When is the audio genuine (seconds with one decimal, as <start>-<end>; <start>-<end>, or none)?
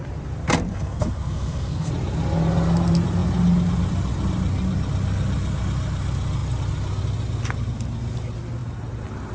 0.0-0.7; 1.9-9.3